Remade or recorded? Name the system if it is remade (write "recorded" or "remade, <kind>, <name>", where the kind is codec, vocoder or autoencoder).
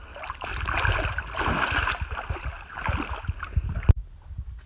recorded